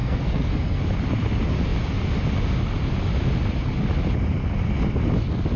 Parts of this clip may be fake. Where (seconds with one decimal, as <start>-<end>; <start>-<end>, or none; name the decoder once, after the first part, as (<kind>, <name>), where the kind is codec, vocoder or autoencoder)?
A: 0.0-0.8 (codec, SNAC)